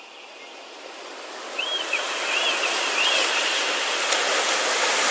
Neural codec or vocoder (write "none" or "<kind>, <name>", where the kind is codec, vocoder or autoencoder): none